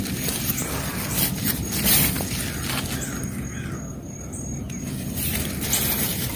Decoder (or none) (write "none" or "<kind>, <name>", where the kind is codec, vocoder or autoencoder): none